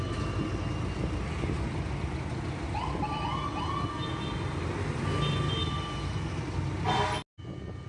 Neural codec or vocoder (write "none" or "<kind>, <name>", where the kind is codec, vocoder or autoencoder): none